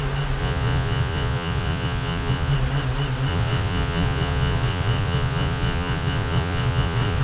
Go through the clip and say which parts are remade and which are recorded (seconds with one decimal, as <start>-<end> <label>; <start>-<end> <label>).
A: 0.0-0.4 recorded; 0.4-2.5 remade; 2.5-3.3 recorded; 3.3-7.2 remade